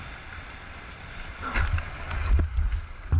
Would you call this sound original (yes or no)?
yes